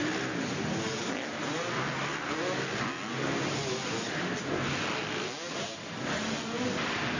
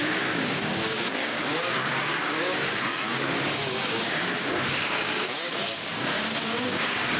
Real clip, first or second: first